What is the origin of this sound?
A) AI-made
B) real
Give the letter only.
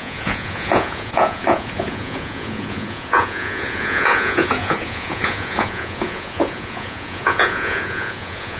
A